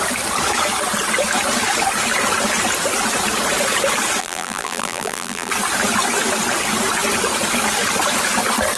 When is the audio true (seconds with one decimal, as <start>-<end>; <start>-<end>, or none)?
0.0-4.2; 5.5-8.8